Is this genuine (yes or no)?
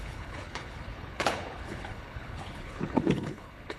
no